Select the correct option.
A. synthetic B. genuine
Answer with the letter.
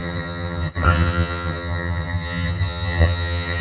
A